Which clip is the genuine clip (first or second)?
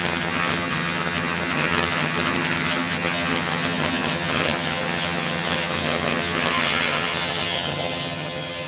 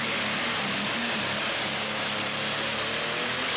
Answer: second